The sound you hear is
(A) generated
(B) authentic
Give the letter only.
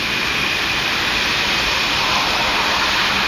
A